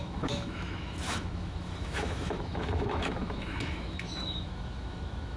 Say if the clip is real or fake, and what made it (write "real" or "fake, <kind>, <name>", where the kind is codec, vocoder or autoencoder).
fake, autoencoder, DAC-VAE